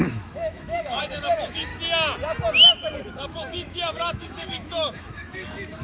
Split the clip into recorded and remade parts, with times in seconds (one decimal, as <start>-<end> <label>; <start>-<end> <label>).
0.0-1.7 remade; 1.7-3.1 recorded; 3.1-5.8 remade